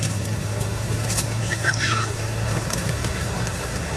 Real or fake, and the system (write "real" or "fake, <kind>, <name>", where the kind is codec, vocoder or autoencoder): fake, codec, SNAC